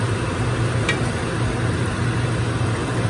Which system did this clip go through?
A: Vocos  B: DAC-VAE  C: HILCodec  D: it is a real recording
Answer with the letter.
D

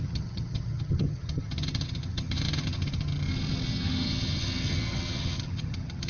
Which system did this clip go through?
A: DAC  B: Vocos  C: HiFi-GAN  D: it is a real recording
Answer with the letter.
C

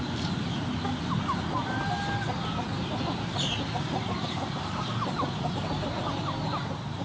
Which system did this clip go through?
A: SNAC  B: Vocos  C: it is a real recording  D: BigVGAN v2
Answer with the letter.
C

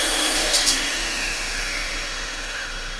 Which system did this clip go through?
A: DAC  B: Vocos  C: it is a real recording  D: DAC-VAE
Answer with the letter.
D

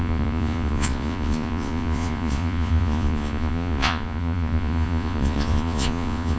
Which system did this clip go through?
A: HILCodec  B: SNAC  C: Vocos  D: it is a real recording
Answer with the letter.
C